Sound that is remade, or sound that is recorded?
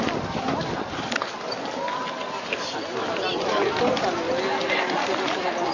recorded